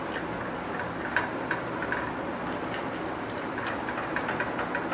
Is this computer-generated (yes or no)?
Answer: no